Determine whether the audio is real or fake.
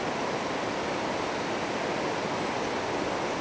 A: real